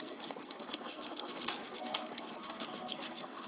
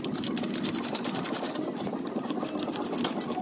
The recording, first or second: second